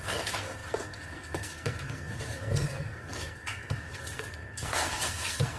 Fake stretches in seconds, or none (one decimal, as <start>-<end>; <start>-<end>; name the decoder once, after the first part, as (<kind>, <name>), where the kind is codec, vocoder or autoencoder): 0.0-5.6 (codec, SNAC)